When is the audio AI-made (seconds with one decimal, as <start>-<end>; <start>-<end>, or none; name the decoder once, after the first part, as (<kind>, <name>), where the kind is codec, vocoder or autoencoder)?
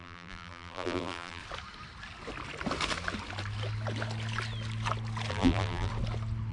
0.0-1.4 (vocoder, BigVGAN v2); 5.3-5.9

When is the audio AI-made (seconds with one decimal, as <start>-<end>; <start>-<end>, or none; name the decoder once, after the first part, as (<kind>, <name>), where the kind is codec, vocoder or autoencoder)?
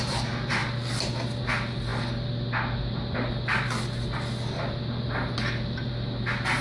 none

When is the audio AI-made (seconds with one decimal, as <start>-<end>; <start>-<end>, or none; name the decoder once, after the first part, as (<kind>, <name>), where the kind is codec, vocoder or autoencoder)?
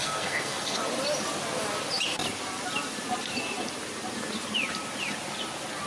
0.0-0.8 (codec, SNAC)